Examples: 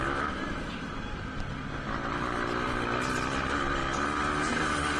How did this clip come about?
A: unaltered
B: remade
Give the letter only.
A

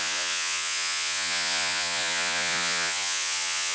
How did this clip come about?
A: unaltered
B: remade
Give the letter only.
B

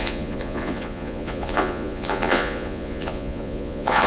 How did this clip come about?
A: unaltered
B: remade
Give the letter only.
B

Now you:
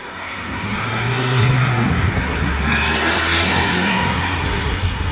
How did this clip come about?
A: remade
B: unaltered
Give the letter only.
A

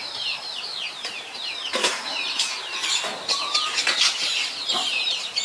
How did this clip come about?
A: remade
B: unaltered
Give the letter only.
A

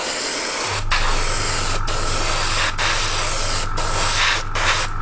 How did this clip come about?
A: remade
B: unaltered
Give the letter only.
B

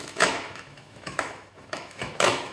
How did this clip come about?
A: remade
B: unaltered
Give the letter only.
A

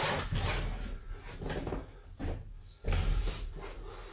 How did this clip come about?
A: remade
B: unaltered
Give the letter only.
B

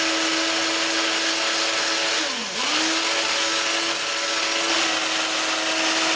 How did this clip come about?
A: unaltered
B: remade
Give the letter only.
A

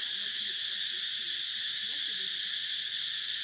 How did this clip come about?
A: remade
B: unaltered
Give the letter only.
B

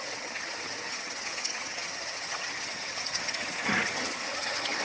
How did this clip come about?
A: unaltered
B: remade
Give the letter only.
B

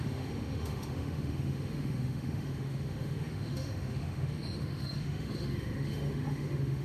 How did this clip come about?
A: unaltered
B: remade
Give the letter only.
B